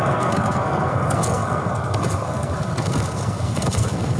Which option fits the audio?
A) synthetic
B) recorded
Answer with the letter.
A